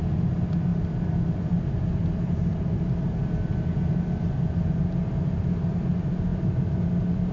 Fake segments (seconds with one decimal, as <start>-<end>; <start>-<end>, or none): none